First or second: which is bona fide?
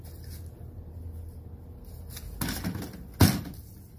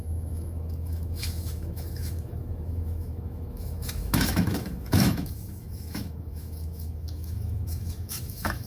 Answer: first